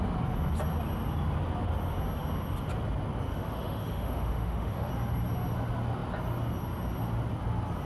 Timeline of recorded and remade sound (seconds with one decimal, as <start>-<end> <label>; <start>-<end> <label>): 0.0-3.3 recorded; 3.3-4.9 remade; 4.9-7.9 recorded

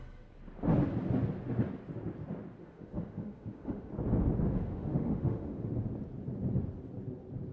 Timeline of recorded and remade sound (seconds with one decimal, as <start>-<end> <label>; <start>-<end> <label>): 0.0-2.6 recorded; 2.6-3.9 remade; 3.9-4.5 recorded; 4.5-5.7 remade; 5.7-7.5 recorded

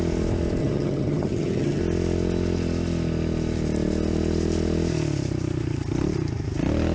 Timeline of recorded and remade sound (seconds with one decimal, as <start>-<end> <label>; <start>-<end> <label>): 0.0-0.6 recorded; 0.6-1.8 remade; 1.8-6.9 recorded

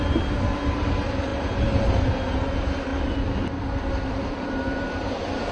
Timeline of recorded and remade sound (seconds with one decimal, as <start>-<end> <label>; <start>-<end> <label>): 0.0-2.9 remade; 2.9-4.1 recorded; 4.1-5.5 remade

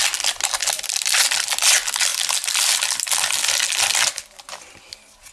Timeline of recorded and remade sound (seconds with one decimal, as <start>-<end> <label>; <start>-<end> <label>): 0.0-2.1 recorded; 2.1-4.8 remade; 4.8-5.3 recorded

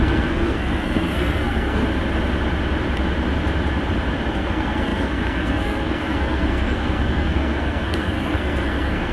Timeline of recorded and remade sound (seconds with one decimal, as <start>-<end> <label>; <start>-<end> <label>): 0.0-1.8 remade; 1.8-4.3 recorded; 4.3-9.1 remade

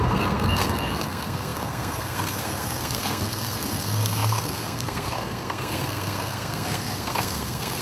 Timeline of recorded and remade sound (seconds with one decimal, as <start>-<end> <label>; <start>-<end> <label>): 0.0-7.8 remade